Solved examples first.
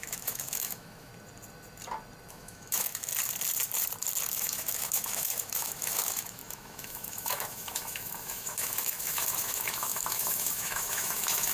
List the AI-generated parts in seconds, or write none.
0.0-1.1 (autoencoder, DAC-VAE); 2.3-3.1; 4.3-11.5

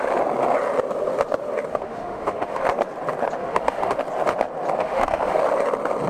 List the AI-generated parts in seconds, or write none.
1.7-2.6 (autoencoder, DAC-VAE); 3.4-4.0; 4.8-5.4

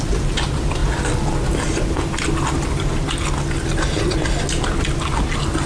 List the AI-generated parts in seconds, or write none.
none

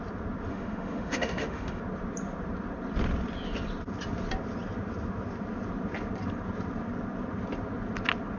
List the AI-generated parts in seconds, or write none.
0.5-1.8 (autoencoder, DAC-VAE)

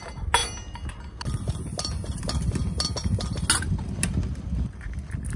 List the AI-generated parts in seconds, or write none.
none

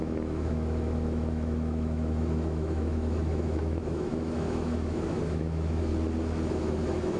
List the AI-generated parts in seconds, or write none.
0.0-5.9 (autoencoder, DAC-VAE); 6.5-7.2